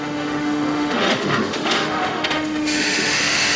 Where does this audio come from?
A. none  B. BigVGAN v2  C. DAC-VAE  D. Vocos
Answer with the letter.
C